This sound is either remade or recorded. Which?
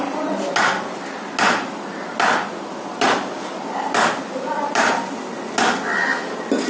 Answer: recorded